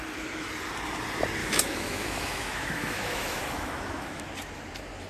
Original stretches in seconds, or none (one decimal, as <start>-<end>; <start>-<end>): 0.0-1.4; 4.2-5.1